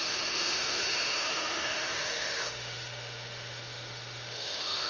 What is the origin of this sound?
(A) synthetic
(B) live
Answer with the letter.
A